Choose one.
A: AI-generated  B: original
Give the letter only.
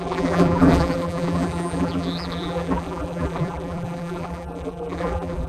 A